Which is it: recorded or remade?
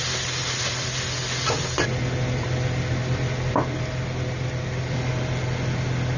recorded